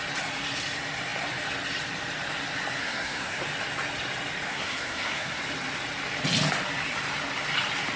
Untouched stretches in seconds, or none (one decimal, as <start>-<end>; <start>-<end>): 0.0-2.8; 3.4-4.5; 5.4-8.0